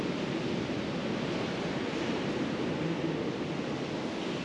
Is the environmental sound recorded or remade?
recorded